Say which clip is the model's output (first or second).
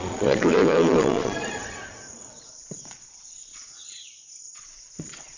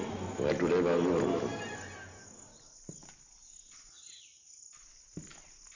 first